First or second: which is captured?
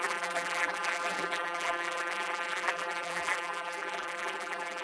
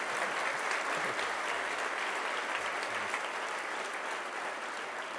second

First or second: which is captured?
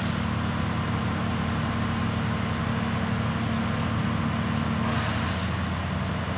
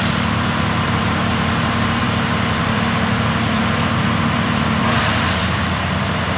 first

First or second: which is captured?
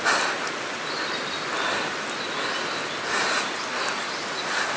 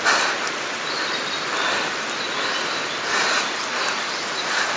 first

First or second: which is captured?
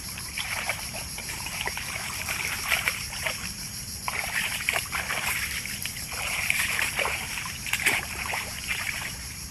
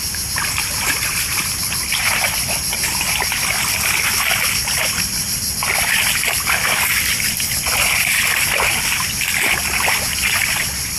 second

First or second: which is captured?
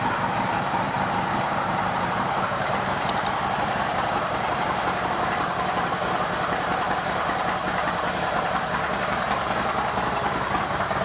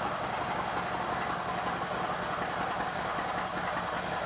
second